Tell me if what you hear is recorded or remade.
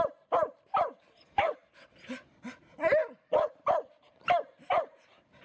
recorded